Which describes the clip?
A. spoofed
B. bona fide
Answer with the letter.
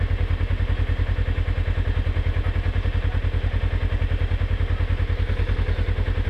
B